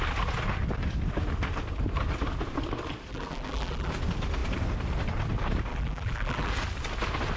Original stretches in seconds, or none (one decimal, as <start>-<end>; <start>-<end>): 0.0-3.1; 3.9-5.7; 6.5-7.4